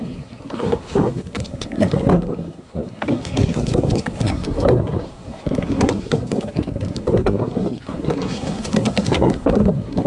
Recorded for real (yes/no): no